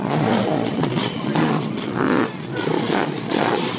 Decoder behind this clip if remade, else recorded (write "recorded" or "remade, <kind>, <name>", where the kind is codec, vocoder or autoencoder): remade, vocoder, Vocos